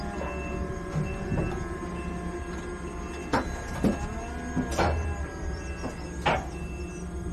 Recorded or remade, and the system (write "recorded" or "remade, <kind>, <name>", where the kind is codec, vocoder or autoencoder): recorded